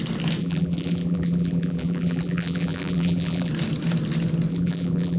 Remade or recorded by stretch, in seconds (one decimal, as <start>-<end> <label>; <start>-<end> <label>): 0.0-0.4 recorded; 0.4-3.5 remade; 3.5-4.5 recorded; 4.5-5.2 remade